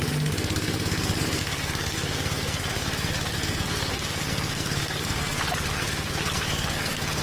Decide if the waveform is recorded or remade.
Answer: remade